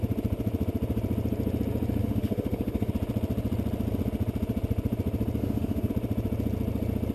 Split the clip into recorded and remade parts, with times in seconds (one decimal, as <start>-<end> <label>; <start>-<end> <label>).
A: 0.0-2.0 recorded; 2.0-2.9 remade; 2.9-5.4 recorded; 5.4-5.9 remade; 5.9-7.1 recorded